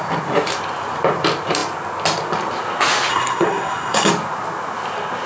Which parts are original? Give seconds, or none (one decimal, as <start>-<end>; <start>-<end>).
0.0-3.1; 4.1-5.3